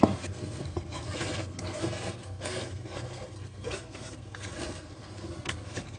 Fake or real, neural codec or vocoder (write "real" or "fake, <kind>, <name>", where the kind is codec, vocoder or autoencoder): fake, codec, SNAC